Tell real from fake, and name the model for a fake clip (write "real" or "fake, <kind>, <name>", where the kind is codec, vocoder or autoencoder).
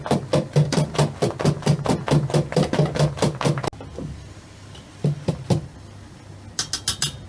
real